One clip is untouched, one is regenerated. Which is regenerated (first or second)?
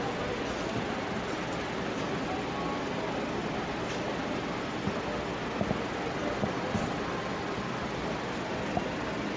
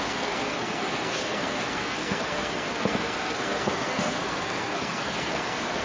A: second